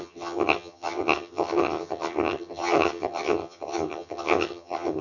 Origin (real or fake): fake